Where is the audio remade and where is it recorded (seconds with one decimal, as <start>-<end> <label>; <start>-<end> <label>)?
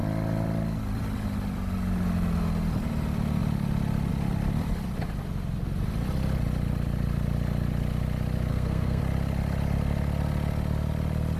0.0-8.5 recorded; 8.5-9.0 remade; 9.0-11.4 recorded